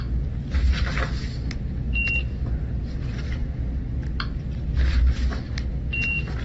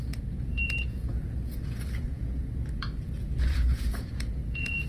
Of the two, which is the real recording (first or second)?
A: first